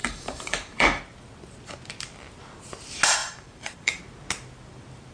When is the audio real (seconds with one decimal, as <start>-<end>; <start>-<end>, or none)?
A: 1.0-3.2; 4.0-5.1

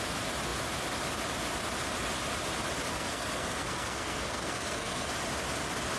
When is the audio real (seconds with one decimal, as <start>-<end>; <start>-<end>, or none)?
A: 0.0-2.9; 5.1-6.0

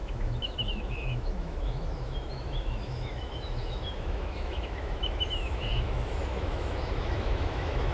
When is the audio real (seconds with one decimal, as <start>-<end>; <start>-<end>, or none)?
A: none